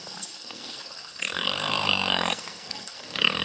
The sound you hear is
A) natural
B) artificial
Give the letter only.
B